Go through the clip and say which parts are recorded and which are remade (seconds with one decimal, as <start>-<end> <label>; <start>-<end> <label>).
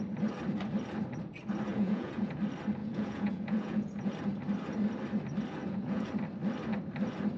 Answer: 0.0-1.7 recorded; 1.7-2.4 remade; 2.4-2.8 recorded; 2.8-4.1 remade; 4.1-5.6 recorded; 5.6-6.1 remade; 6.1-7.4 recorded